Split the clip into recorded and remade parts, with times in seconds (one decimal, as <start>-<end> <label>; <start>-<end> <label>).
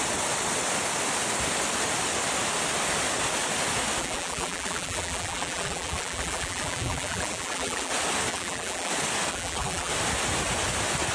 0.0-4.0 recorded; 4.0-7.9 remade; 7.9-8.3 recorded; 8.3-8.9 remade; 8.9-9.3 recorded; 9.3-9.9 remade; 9.9-11.1 recorded